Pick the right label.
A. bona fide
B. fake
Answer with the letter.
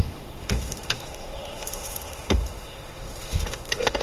B